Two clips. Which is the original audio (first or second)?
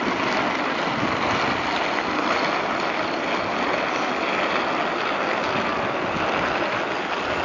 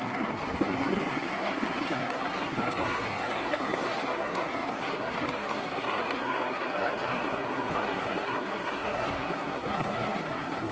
first